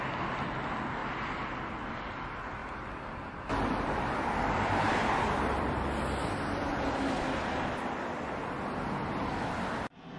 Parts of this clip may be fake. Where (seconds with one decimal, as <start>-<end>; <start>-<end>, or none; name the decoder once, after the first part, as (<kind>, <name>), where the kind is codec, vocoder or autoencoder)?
1.0-1.9 (vocoder, BigVGAN v2); 2.6-6.0